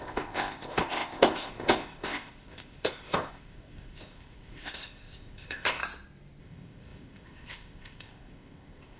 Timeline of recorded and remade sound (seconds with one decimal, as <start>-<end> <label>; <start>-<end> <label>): 0.0-5.8 remade; 5.8-6.4 recorded; 6.4-9.0 remade